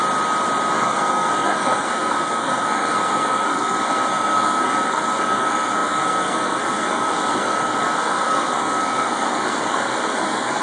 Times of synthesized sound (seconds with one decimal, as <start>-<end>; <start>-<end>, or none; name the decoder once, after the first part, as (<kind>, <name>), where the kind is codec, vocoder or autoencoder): 0.7-10.6 (codec, SNAC)